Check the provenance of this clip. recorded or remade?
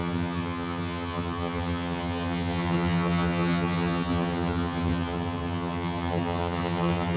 remade